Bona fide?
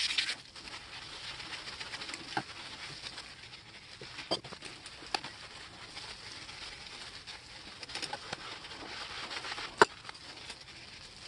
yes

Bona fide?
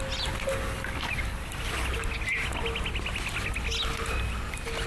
yes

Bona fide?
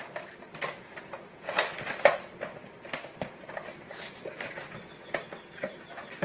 yes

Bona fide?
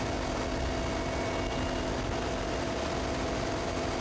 yes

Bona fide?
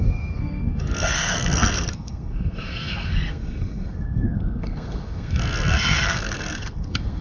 no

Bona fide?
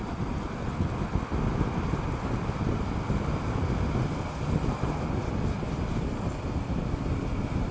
yes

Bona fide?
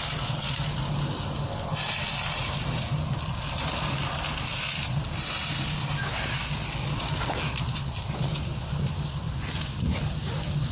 yes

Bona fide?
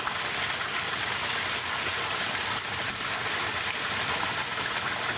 yes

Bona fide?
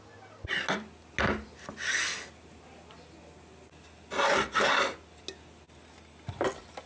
yes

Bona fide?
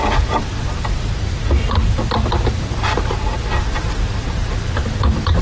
no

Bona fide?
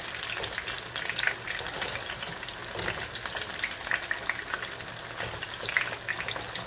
yes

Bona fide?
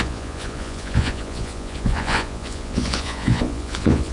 no